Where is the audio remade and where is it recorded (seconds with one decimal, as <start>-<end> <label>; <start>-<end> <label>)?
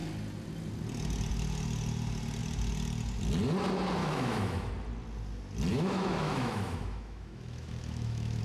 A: 0.0-4.0 recorded; 4.0-4.7 remade; 4.7-5.7 recorded; 5.7-8.4 remade